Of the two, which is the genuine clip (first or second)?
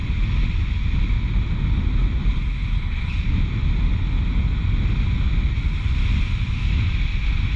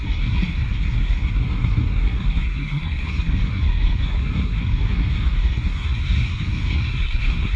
first